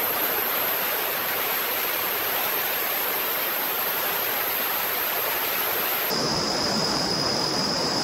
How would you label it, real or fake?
fake